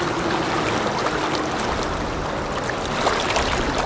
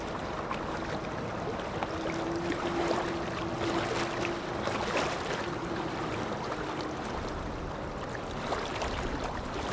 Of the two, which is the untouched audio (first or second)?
first